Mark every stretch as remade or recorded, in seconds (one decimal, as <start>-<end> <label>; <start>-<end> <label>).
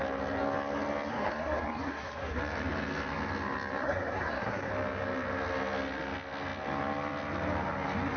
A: 0.0-1.1 recorded; 1.1-2.4 remade; 2.4-3.8 recorded; 3.8-4.7 remade; 4.7-8.2 recorded